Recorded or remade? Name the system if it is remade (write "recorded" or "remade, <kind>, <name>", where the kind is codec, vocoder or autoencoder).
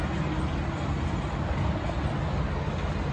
recorded